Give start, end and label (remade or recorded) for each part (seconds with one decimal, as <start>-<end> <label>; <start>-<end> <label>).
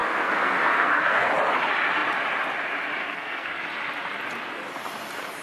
0.0-1.3 remade; 1.3-3.0 recorded; 3.0-3.6 remade; 3.6-5.4 recorded